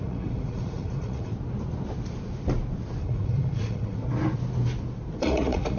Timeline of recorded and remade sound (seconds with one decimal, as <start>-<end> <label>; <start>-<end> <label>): 0.0-1.3 remade; 1.3-3.0 recorded; 3.0-4.0 remade; 4.0-5.2 recorded; 5.2-5.8 remade